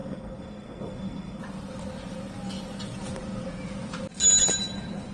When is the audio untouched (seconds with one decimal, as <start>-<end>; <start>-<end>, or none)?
1.4-5.1